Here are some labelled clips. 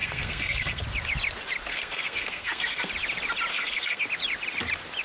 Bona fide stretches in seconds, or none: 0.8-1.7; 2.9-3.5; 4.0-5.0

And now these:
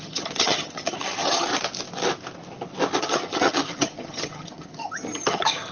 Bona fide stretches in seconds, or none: 1.5-3.0